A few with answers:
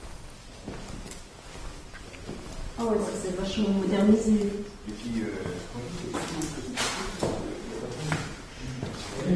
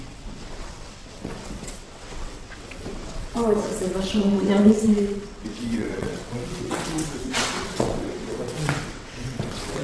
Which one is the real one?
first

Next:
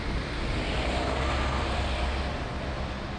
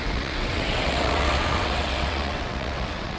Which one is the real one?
first